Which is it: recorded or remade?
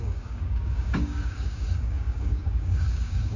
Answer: remade